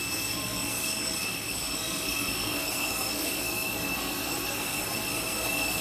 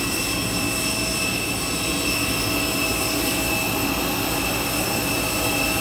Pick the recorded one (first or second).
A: second